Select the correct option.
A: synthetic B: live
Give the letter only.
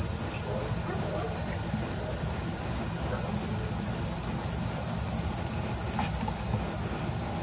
B